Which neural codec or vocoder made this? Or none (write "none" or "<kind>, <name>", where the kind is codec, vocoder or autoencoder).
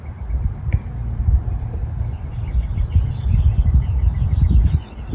none